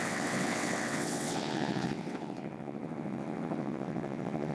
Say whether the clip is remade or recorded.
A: remade